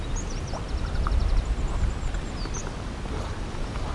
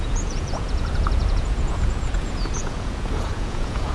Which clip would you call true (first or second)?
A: first